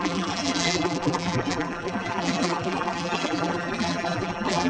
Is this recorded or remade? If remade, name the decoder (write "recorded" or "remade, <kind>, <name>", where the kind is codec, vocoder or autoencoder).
remade, vocoder, BigVGAN v2